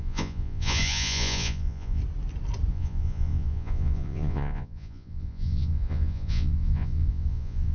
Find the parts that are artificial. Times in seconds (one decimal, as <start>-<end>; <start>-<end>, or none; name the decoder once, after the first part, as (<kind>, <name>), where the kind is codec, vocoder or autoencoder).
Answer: 0.0-2.0 (vocoder, Vocos); 2.7-7.7